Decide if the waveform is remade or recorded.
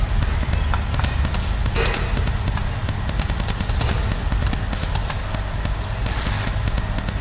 recorded